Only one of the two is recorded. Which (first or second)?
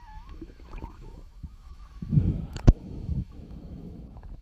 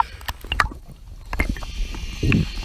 second